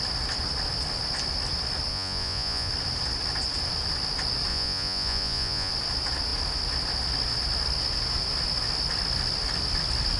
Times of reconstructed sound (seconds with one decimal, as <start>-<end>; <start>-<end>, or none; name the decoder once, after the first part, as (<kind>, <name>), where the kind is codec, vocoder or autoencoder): 1.9-2.7 (vocoder, Vocos); 4.5-5.7